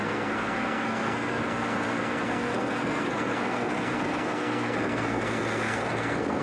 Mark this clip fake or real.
fake